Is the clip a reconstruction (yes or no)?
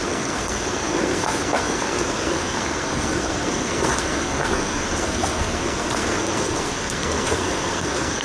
yes